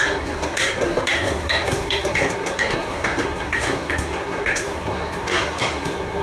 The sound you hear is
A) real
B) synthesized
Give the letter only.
B